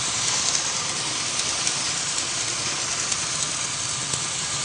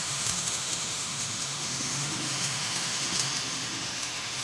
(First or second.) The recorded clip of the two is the first